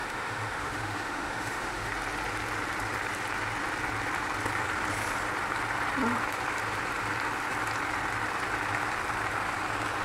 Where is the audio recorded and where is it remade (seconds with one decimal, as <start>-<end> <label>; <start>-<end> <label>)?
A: 0.0-1.9 remade; 1.9-10.0 recorded